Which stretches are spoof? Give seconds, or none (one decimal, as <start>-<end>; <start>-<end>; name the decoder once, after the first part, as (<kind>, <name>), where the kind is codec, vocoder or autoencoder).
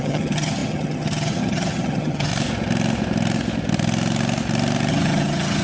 0.0-2.3 (vocoder, HiFi-GAN); 4.9-5.6